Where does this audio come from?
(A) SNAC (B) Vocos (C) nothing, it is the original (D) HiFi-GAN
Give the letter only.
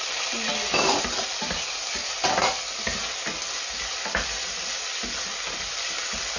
C